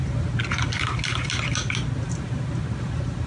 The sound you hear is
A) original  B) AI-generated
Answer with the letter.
A